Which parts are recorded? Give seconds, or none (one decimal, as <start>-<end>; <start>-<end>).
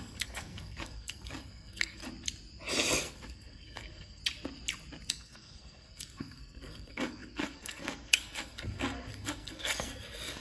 2.0-3.0; 4.2-5.1